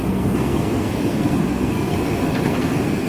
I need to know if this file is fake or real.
fake